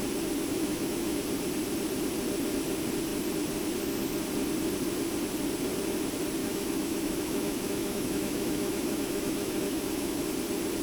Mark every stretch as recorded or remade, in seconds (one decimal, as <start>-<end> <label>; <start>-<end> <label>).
0.0-0.5 recorded; 0.5-1.2 remade; 1.2-6.4 recorded; 6.4-10.3 remade; 10.3-10.8 recorded